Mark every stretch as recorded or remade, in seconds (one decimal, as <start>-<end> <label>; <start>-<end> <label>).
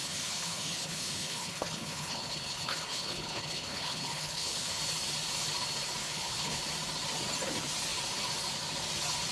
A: 0.0-4.8 remade; 4.8-6.0 recorded; 6.0-6.6 remade; 6.6-9.3 recorded